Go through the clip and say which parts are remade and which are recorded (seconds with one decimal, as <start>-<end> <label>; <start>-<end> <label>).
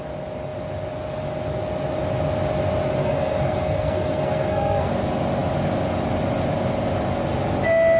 0.0-3.0 recorded; 3.0-4.9 remade; 4.9-8.0 recorded